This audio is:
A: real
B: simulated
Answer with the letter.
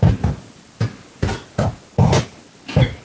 A